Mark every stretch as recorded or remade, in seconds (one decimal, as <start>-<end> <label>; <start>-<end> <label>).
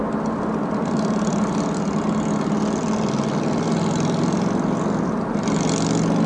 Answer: 0.0-6.3 recorded